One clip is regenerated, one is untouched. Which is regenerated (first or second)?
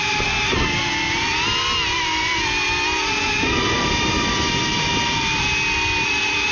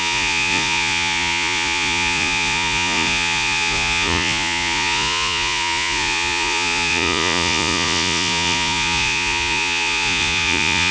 second